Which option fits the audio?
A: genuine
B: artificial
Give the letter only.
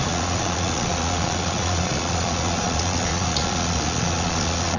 B